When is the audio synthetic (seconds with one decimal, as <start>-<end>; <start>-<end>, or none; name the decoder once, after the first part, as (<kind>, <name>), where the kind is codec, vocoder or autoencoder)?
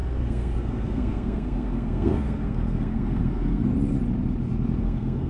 0.0-3.7 (codec, SNAC); 4.8-5.3